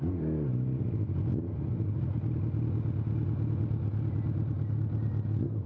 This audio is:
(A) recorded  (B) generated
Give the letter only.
A